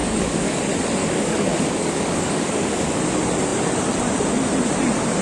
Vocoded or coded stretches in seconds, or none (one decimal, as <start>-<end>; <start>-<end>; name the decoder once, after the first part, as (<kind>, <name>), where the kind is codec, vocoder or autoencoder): 0.0-0.6 (codec, DAC); 1.0-3.0